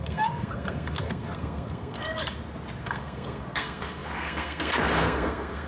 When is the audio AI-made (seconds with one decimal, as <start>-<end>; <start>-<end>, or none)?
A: 0.0-2.2; 2.8-5.7